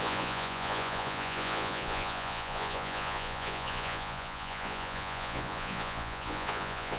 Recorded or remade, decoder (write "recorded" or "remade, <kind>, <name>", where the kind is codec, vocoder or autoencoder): remade, vocoder, Vocos